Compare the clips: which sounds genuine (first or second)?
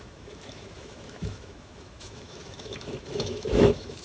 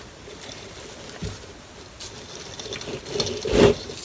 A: second